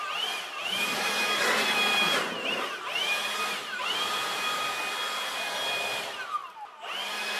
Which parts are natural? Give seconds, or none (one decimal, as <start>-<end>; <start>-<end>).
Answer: 0.0-0.6; 4.8-7.4